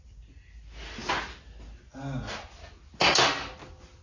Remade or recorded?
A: recorded